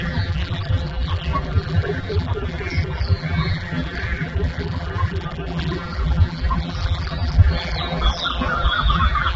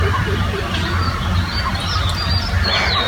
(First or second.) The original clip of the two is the second